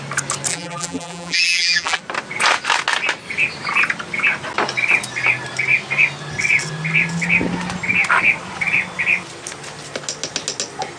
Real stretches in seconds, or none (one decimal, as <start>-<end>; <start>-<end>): 0.0-0.5; 2.0-11.0

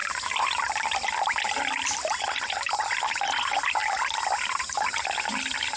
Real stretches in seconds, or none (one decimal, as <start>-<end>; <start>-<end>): 0.0-5.8

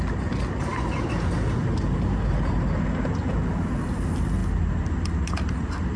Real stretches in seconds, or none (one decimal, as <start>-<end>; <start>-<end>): 0.0-6.0

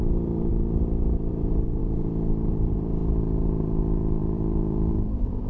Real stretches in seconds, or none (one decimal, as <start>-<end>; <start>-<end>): 0.5-1.3; 1.8-2.5; 3.0-3.6

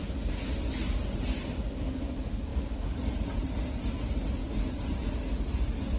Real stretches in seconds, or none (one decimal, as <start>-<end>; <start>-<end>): 0.0-6.0

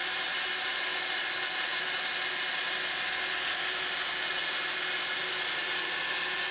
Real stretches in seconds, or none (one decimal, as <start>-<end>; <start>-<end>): 1.2-1.7; 5.3-6.5

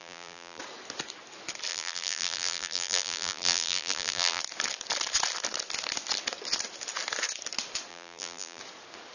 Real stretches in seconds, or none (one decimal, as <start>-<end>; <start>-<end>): 0.6-1.7; 4.4-7.9; 8.6-9.1

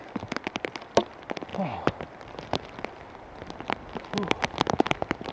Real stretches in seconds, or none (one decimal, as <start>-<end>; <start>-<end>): none